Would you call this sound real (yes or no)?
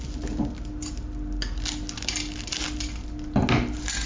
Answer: yes